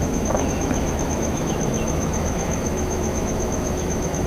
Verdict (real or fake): fake